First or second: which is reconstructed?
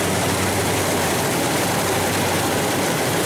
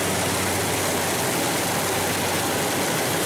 first